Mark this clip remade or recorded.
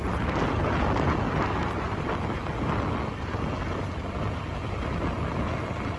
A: recorded